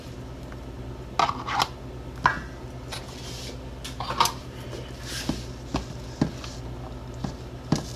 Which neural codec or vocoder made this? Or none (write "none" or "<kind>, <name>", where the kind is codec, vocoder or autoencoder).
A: none